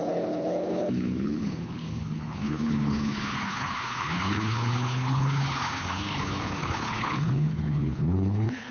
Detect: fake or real fake